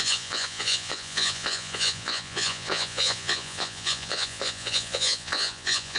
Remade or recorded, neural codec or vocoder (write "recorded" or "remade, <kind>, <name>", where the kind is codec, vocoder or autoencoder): remade, vocoder, Vocos